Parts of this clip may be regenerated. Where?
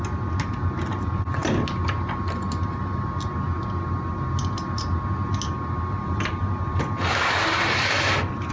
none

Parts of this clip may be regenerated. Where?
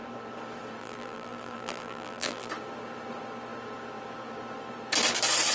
0.8-2.5 (vocoder, BigVGAN v2)